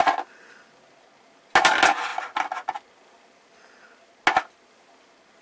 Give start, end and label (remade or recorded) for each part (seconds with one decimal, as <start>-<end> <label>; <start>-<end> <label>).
0.0-5.4 recorded